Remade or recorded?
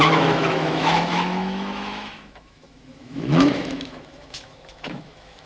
remade